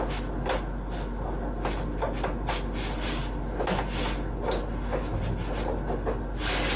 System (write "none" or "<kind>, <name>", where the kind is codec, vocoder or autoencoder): none